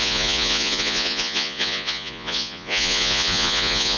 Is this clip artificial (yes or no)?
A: yes